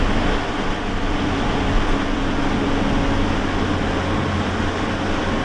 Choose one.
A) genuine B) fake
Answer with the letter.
A